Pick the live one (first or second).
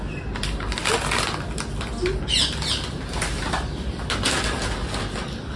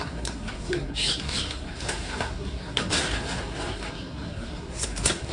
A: first